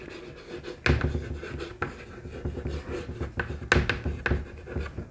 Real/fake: real